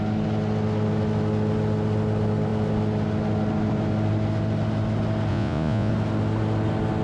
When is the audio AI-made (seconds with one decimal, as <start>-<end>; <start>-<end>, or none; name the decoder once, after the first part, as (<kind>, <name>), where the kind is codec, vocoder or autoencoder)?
5.3-5.9 (vocoder, Vocos)